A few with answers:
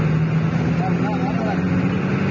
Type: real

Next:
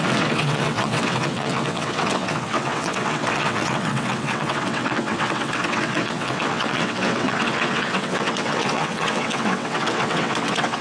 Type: fake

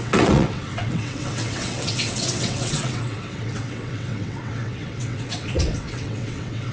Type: fake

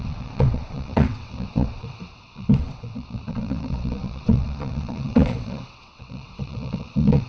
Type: fake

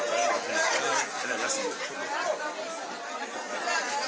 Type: real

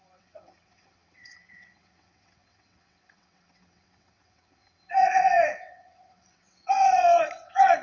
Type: fake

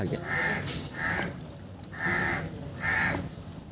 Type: real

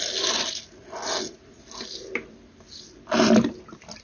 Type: real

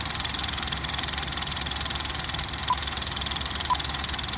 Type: real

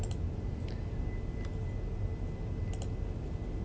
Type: real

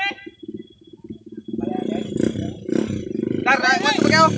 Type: real